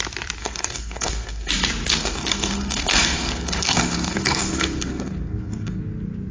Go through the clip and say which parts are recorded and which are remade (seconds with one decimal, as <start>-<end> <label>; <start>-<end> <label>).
0.0-0.4 recorded; 0.4-1.5 remade; 1.5-2.0 recorded; 2.0-5.8 remade; 5.8-6.3 recorded